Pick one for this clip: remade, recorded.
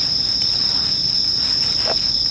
recorded